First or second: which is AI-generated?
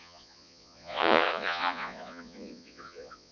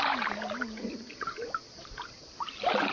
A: first